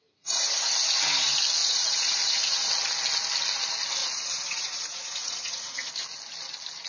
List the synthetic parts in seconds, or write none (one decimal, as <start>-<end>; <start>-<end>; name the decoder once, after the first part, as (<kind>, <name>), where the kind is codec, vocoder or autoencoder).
1.6-2.7 (vocoder, Vocos); 4.0-5.9